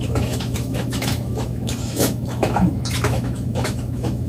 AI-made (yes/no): yes